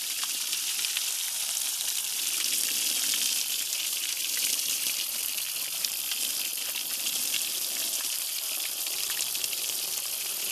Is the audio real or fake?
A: fake